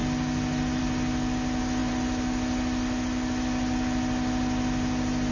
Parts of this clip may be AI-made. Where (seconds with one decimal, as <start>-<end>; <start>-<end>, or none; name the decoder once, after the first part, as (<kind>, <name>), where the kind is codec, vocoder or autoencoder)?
none